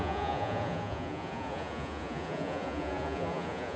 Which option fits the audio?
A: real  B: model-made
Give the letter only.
B